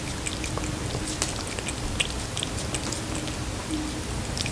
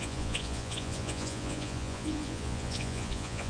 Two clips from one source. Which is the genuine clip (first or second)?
first